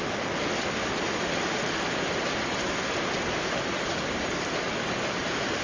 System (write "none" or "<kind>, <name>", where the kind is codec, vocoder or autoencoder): none